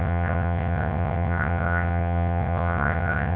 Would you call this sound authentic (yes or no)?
no